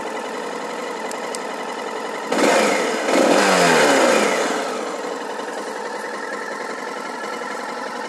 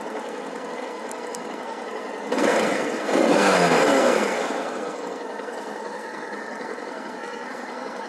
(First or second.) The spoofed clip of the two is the second